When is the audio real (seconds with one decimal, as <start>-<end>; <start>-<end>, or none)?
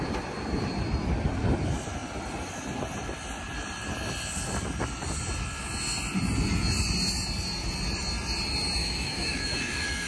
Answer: 0.0-8.8